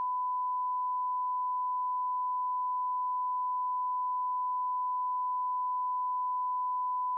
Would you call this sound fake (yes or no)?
no